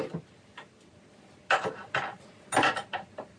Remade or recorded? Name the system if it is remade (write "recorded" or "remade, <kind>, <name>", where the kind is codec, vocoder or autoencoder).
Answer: recorded